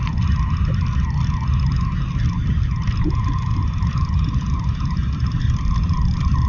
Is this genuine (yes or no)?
yes